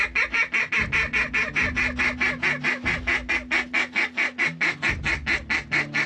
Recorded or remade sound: recorded